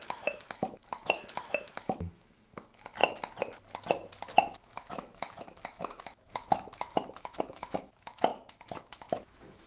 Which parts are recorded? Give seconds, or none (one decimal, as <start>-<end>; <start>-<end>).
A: 3.0-4.6